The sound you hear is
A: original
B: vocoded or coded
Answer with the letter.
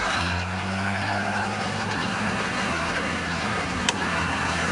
B